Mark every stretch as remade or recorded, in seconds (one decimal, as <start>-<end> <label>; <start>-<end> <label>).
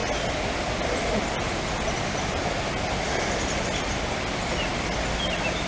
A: 0.0-5.7 recorded